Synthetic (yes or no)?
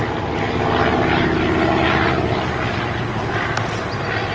no